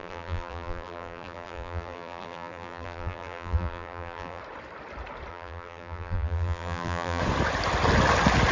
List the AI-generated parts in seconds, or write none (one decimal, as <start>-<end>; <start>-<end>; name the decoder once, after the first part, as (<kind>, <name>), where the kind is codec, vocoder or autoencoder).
0.0-4.4 (vocoder, BigVGAN v2); 5.3-7.2